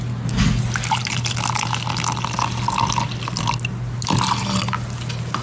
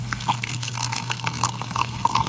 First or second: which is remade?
second